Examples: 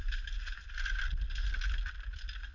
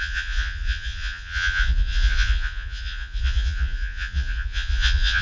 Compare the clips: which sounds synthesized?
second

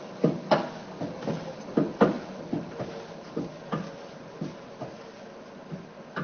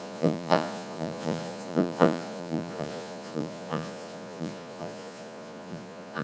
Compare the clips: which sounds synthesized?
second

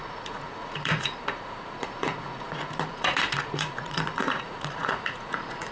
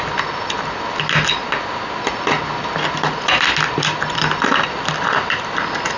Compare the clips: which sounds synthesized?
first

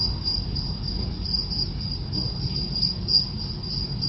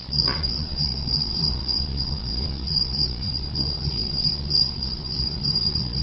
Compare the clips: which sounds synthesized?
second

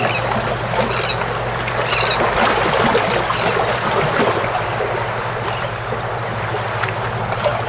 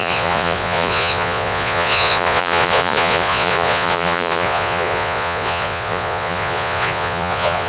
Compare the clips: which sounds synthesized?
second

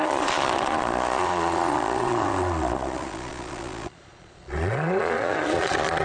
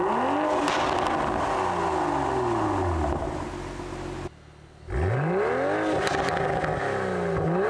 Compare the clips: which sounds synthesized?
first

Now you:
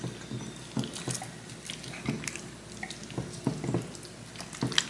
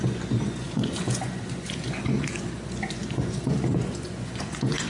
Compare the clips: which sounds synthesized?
second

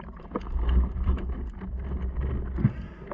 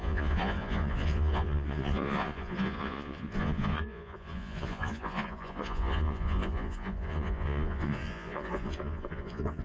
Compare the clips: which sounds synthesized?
second